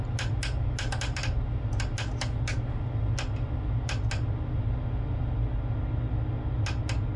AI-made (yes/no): no